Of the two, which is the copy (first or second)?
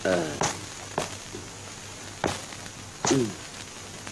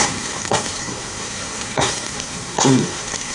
second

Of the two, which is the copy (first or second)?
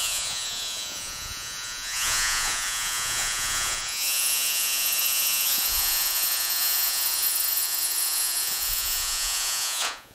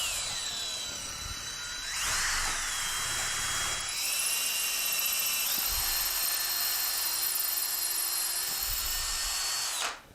first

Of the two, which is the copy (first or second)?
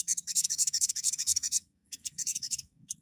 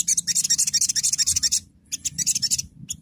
first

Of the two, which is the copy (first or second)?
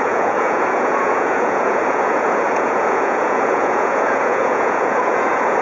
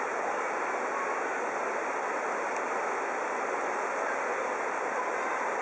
first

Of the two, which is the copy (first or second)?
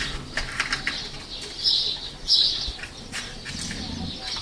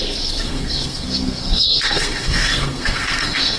second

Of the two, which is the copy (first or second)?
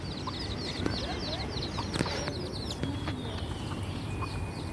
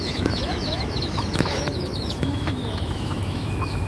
second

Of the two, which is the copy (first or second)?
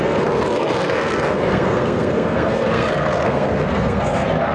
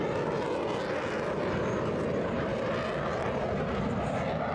first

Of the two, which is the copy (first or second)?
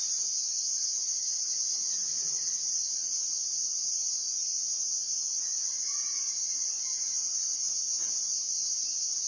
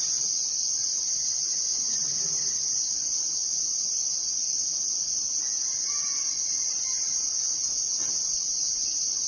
first